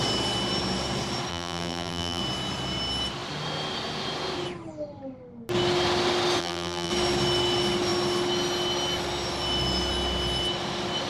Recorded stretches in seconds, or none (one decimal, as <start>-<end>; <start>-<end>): 0.0-1.3; 2.2-6.4; 6.9-11.1